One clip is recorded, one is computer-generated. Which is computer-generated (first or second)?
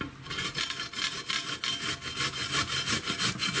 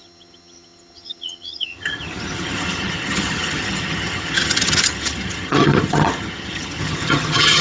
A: second